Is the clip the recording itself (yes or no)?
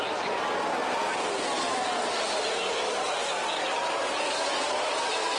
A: yes